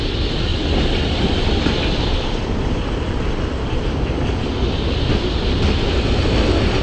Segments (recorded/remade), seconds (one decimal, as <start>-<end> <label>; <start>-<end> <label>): 0.0-0.5 recorded; 0.5-4.0 remade; 4.0-6.8 recorded